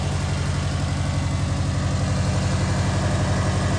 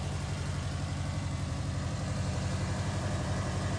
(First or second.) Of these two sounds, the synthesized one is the second